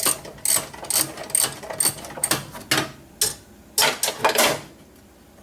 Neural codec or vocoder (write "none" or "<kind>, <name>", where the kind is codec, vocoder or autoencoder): none